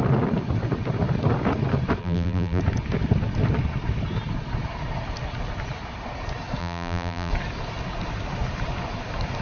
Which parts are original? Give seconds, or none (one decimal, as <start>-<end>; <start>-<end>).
0.0-2.0; 2.6-6.6; 7.3-9.4